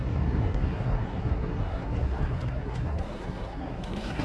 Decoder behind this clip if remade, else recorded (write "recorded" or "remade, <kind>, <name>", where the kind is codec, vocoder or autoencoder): remade, codec, SNAC